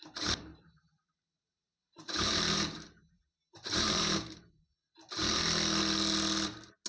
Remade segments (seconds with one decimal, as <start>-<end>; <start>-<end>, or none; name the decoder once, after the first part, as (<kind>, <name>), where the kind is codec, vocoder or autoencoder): 0.5-4.6 (vocoder, BigVGAN v2)